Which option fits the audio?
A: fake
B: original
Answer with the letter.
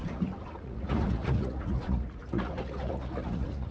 A